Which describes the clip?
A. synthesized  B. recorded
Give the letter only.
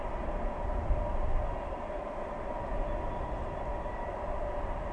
B